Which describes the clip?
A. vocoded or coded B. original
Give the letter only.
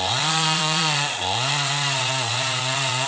A